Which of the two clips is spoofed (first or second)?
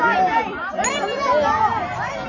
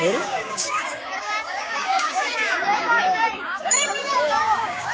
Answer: second